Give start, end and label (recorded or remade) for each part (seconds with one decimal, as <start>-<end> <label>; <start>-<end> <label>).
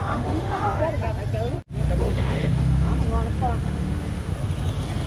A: 0.0-0.8 remade; 0.8-2.0 recorded; 2.0-2.9 remade; 2.9-3.6 recorded; 3.6-4.3 remade; 4.3-5.1 recorded